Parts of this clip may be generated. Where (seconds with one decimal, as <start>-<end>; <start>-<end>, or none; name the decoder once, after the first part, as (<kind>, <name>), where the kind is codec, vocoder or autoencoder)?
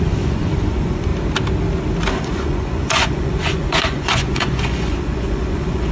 0.0-1.1 (vocoder, Vocos); 2.1-5.9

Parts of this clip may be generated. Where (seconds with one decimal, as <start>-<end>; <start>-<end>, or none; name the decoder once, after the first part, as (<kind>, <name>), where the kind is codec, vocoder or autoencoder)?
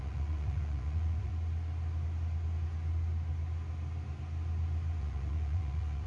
0.0-1.3 (vocoder, Vocos); 5.0-6.1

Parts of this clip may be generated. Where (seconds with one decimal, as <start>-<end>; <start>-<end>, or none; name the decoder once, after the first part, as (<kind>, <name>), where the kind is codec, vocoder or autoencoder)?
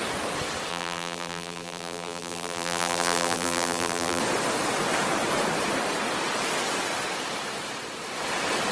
0.7-4.2 (vocoder, BigVGAN v2)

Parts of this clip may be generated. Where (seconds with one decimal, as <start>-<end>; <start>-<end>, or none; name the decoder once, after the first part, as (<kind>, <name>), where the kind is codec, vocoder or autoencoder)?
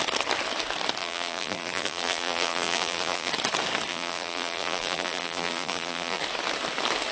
1.0-3.3 (vocoder, BigVGAN v2); 3.9-6.2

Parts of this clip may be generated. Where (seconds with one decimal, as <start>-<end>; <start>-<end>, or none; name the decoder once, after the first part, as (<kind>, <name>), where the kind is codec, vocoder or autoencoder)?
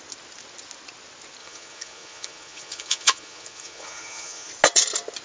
1.4-4.5 (vocoder, Vocos)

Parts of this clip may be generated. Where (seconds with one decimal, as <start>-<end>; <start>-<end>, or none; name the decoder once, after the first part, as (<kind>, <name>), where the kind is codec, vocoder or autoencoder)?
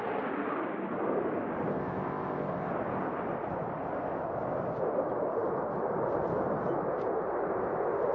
1.7-2.7 (codec, ZipCodec)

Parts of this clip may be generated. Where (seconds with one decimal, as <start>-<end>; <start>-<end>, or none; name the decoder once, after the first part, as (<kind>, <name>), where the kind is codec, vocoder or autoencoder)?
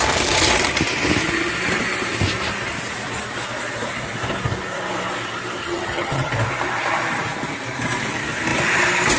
5.6-6.3 (vocoder, HiFi-GAN)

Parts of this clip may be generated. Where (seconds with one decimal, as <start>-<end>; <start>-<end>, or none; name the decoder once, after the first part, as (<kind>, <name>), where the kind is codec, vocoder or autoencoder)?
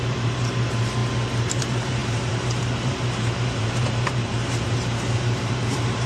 0.0-6.1 (vocoder, BigVGAN v2)